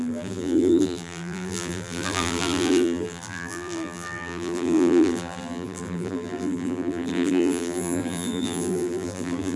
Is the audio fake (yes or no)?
yes